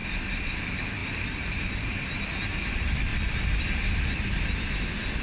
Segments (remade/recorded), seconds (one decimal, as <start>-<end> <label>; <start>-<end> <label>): 0.0-0.6 remade; 0.6-1.0 recorded; 1.0-2.2 remade; 2.2-5.2 recorded